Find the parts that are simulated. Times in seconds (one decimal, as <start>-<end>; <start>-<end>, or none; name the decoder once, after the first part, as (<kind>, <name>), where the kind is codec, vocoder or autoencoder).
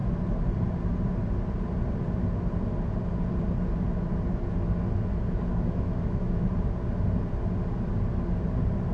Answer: 5.5-6.5 (autoencoder, DAC-VAE)